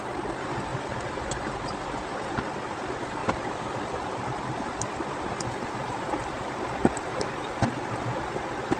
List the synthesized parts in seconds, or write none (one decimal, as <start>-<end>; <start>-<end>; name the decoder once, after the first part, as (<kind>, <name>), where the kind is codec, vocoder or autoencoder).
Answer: 0.7-1.8 (vocoder, BigVGAN v2); 3.2-7.3